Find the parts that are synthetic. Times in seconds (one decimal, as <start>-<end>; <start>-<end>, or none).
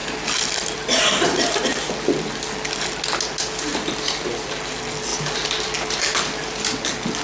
0.0-2.5; 3.7-4.5